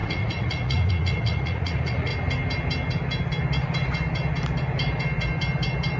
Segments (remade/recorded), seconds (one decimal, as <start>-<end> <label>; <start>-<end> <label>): 0.0-2.1 remade; 2.1-6.0 recorded

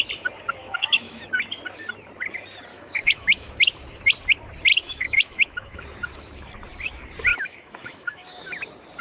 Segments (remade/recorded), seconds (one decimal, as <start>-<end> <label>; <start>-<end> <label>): 0.0-0.6 recorded; 0.6-1.2 remade; 1.2-2.7 recorded; 2.7-3.5 remade; 3.5-4.7 recorded; 4.7-5.8 remade; 5.8-7.3 recorded; 7.3-8.4 remade; 8.4-9.0 recorded

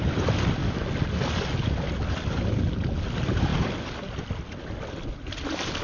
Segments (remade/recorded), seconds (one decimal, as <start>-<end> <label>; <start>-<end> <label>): 0.0-5.8 recorded

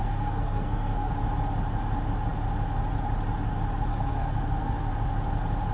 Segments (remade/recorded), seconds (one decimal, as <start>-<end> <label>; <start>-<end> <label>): 0.0-1.1 remade; 1.1-3.9 recorded; 3.9-4.9 remade; 4.9-5.7 recorded

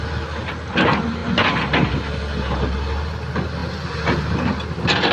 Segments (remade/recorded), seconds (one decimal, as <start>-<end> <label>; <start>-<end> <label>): 0.0-5.1 recorded

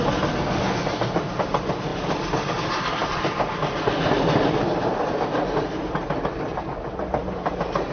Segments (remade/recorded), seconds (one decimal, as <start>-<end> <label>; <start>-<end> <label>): 0.0-7.9 recorded

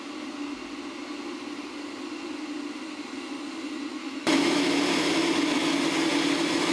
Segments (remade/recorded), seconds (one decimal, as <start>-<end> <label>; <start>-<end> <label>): 0.0-4.0 recorded; 4.0-4.7 remade; 4.7-6.7 recorded